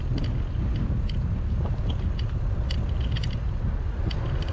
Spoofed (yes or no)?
no